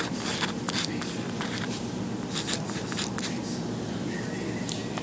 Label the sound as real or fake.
fake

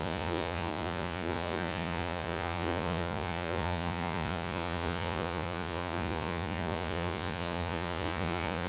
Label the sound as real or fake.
fake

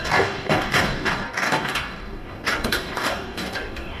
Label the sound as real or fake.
fake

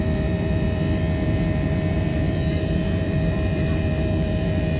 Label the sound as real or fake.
fake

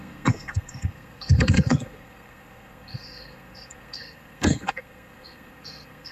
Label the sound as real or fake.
fake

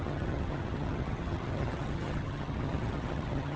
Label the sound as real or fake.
fake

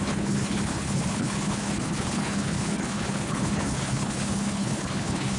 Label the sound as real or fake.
fake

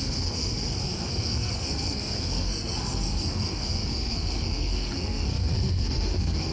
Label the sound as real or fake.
fake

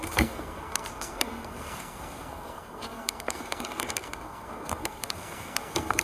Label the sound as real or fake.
fake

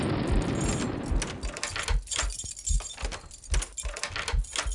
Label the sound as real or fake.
real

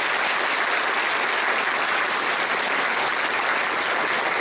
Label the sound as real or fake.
real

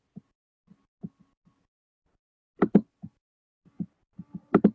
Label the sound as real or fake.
real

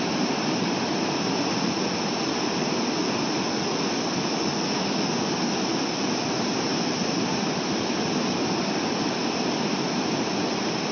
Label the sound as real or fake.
real